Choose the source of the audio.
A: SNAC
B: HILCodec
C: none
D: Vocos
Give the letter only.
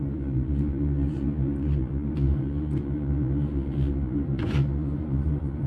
D